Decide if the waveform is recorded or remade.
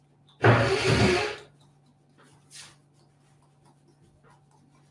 recorded